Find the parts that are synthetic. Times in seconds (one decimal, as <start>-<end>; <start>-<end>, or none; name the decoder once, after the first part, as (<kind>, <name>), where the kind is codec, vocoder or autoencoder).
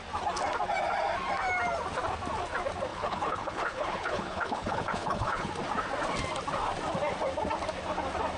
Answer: 2.9-5.5 (codec, HILCodec)